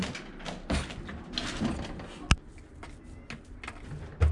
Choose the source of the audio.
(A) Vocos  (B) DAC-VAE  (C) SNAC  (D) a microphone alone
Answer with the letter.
D